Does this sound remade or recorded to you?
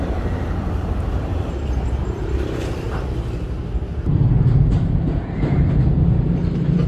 remade